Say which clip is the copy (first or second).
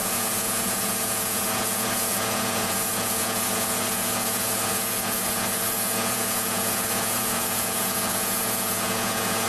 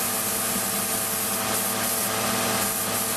first